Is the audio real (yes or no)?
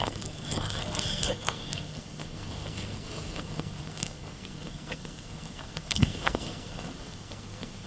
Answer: no